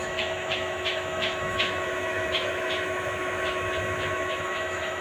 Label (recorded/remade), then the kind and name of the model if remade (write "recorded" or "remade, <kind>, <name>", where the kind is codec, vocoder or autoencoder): remade, autoencoder, DAC-VAE